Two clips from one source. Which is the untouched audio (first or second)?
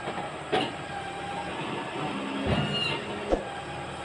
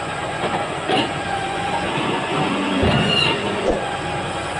first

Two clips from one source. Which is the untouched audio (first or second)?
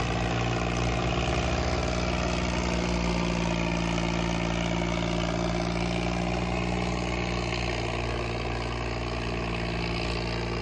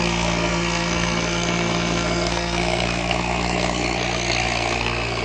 first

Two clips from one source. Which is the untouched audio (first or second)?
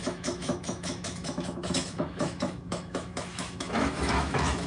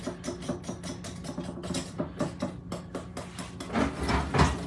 second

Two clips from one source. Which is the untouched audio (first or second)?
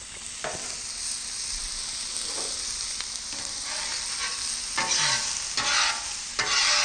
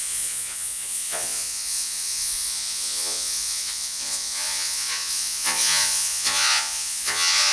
first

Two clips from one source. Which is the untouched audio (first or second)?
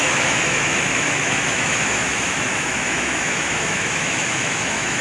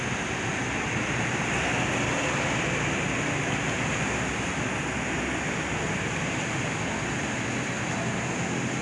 second